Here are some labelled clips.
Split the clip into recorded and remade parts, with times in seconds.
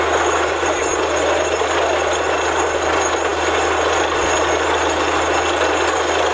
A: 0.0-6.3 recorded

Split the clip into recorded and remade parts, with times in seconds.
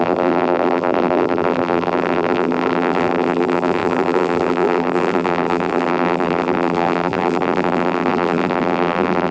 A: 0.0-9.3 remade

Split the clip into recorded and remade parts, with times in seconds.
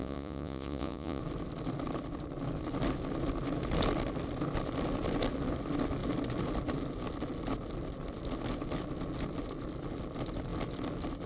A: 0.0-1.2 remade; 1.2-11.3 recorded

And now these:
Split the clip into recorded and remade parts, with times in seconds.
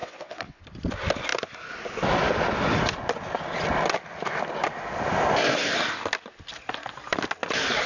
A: 0.0-0.6 remade; 0.6-7.9 recorded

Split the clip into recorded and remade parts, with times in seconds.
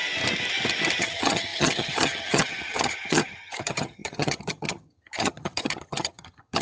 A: 0.0-1.0 recorded; 1.0-6.6 remade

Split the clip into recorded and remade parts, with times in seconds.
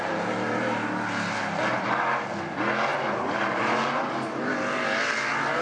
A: 0.0-5.6 recorded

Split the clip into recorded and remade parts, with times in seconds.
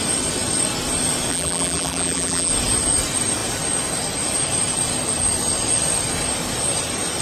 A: 0.0-1.3 recorded; 1.3-2.5 remade; 2.5-7.2 recorded